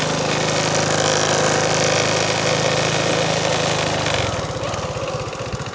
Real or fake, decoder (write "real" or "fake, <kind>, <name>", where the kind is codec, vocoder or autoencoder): real